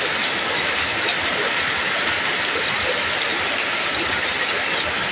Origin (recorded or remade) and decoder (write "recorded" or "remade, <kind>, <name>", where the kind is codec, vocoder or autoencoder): recorded